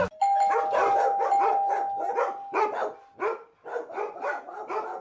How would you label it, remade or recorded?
recorded